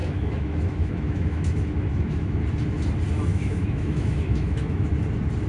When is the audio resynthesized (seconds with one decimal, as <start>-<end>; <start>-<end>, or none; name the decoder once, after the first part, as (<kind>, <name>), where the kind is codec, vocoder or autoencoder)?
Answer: 0.0-2.4 (autoencoder, DAC-VAE); 3.3-4.9